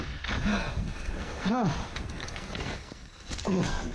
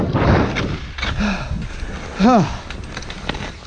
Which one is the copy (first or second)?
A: first